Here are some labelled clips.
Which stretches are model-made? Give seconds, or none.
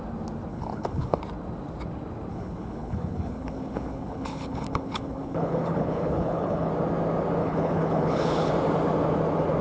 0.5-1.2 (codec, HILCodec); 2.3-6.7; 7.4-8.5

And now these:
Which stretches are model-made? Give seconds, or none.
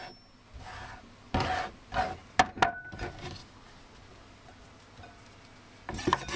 none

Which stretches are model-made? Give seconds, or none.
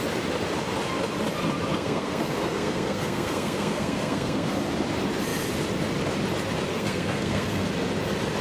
1.7-4.5 (codec, SNAC); 6.7-7.7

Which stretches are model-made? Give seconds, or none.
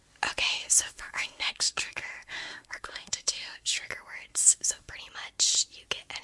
0.5-3.9 (codec, SNAC); 4.3-4.9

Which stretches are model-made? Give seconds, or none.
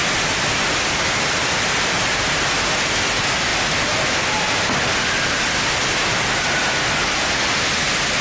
none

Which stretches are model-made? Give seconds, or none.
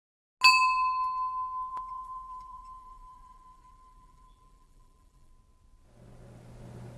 1.7-5.3 (vocoder, BigVGAN v2)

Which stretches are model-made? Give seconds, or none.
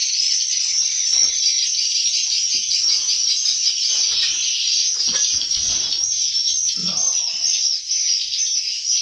0.0-1.4 (vocoder, Vocos); 6.8-7.8